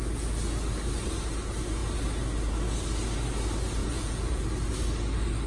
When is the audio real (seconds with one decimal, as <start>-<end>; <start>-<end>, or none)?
0.0-3.8; 4.4-5.5

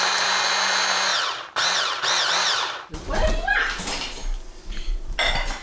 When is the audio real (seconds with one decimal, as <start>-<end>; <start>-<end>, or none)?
0.0-1.1; 2.0-2.5; 3.3-5.6